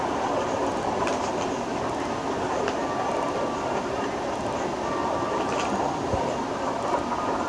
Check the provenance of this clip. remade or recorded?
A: recorded